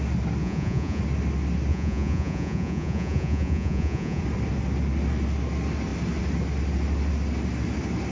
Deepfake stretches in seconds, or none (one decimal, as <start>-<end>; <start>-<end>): 0.4-1.0; 1.7-4.2